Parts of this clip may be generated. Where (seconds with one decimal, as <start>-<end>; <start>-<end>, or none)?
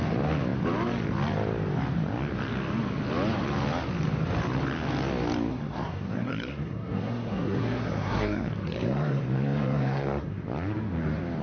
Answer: 5.5-10.4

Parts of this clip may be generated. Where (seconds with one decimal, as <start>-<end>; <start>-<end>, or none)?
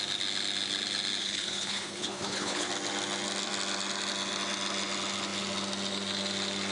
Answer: 1.2-2.7